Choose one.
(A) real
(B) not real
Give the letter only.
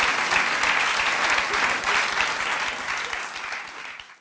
A